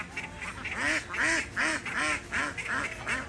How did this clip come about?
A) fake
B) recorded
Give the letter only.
B